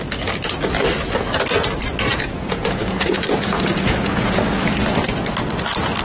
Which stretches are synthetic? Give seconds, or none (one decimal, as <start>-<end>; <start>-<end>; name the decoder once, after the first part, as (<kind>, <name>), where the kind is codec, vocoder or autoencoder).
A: 2.1-4.4 (vocoder, Vocos)